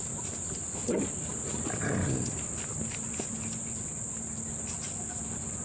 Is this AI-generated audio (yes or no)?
no